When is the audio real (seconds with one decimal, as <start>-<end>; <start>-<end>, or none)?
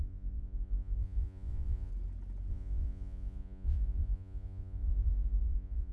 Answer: 1.9-2.5